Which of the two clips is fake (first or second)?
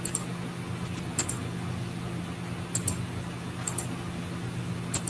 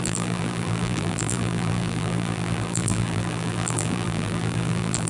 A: second